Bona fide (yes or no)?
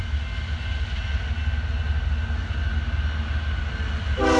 yes